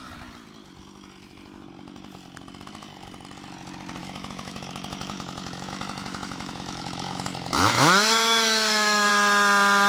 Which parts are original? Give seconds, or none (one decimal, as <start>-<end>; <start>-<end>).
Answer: 0.0-4.0; 9.1-9.9